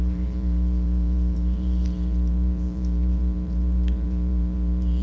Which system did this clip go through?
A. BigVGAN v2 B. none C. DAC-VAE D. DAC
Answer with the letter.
A